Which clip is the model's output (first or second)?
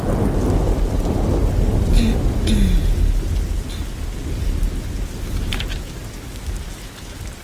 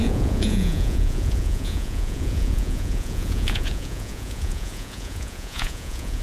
second